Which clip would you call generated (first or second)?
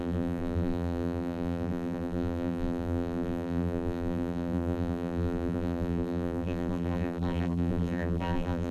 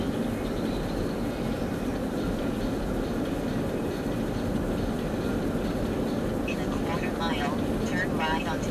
first